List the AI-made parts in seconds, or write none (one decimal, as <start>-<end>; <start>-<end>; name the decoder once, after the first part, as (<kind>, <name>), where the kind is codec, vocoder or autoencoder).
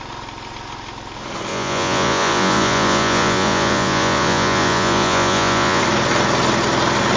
1.5-5.8 (vocoder, Vocos)